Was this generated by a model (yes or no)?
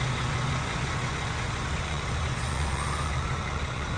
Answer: yes